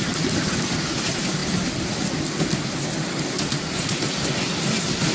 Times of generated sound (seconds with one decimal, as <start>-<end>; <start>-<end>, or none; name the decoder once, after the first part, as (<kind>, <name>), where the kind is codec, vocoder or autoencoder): none